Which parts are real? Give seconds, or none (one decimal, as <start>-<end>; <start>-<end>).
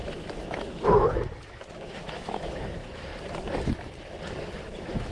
3.1-4.4